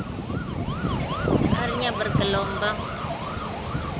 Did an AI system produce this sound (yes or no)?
no